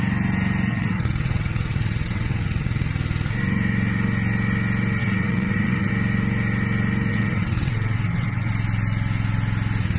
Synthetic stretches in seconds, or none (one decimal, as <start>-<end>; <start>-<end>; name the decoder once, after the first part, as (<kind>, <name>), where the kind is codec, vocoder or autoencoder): 0.7-2.9 (vocoder, WaveNeXt); 5.0-5.9; 7.1-8.5